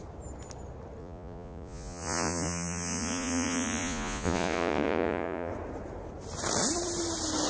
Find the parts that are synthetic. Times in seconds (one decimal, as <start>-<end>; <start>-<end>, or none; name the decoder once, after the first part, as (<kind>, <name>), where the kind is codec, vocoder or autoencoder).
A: 1.0-5.5 (vocoder, Vocos)

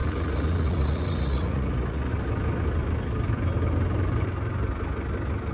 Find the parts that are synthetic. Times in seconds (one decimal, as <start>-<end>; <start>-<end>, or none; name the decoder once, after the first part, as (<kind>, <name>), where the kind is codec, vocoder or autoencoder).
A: 0.0-2.1 (vocoder, Vocos)